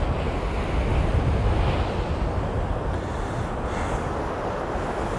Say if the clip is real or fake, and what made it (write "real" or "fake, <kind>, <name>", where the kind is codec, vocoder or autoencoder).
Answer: real